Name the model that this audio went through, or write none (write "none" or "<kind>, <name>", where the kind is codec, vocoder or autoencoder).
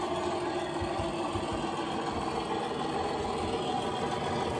none